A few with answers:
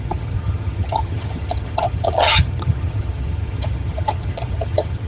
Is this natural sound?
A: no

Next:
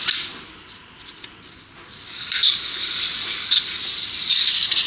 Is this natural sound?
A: yes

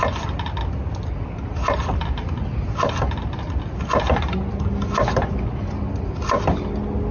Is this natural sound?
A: yes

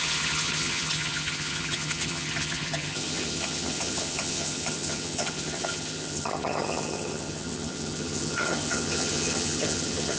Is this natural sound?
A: no